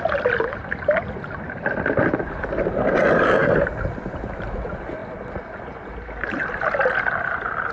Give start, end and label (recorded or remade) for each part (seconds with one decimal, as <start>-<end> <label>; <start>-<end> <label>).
0.0-7.7 recorded